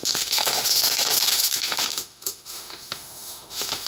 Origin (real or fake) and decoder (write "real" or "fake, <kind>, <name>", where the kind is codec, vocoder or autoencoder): fake, autoencoder, DAC-VAE